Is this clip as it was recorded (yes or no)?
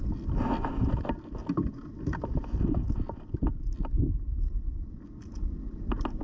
yes